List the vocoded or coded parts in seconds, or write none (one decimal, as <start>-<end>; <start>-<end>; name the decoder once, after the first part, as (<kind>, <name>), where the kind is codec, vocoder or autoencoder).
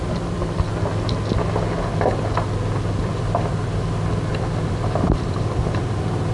0.0-0.7 (vocoder, BigVGAN v2); 4.3-6.3